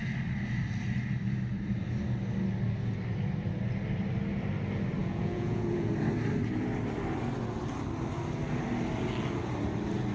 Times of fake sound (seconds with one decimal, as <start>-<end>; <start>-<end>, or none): 5.0-5.9